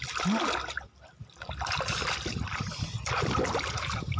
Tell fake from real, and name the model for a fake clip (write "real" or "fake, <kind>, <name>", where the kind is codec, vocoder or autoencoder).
real